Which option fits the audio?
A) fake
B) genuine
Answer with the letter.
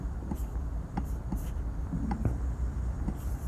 A